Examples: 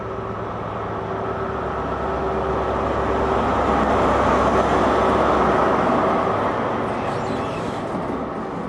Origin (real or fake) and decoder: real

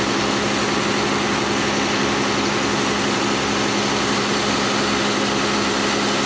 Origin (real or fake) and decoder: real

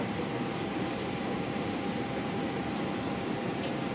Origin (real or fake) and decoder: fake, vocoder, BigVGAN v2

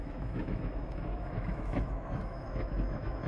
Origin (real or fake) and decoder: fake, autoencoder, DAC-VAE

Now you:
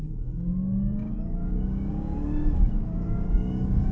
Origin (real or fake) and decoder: fake, codec, DAC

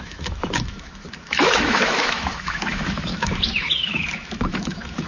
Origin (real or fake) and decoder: fake, autoencoder, DAC-VAE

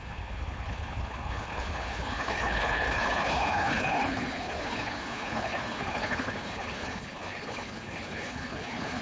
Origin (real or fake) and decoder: fake, codec, HILCodec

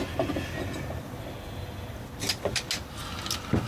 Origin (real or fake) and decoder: real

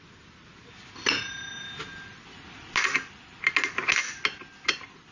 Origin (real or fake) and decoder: real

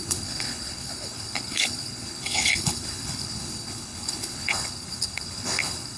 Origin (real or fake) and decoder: fake, codec, HILCodec